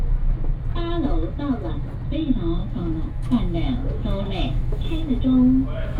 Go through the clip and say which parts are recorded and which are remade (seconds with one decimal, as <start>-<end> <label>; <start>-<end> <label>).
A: 0.0-2.6 recorded; 2.6-5.2 remade; 5.2-6.0 recorded